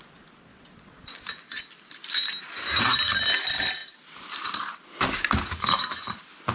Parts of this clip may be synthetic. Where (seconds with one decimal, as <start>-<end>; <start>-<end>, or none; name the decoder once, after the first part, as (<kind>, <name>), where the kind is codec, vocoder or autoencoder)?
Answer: 0.5-1.6 (vocoder, Vocos)